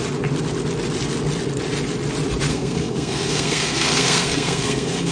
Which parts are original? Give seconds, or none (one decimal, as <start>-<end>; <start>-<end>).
0.0-2.5